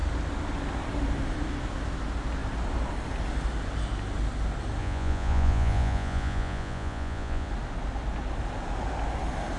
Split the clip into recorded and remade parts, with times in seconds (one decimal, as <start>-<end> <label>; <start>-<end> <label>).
0.0-4.8 recorded; 4.8-7.5 remade; 7.5-9.6 recorded